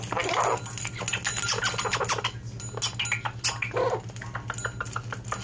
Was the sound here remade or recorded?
recorded